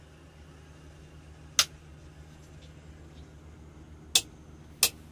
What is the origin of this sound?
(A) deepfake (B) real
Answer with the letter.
B